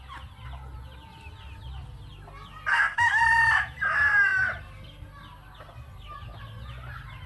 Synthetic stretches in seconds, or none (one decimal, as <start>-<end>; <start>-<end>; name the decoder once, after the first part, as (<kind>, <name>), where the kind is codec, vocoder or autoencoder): 2.7-3.2 (codec, SNAC)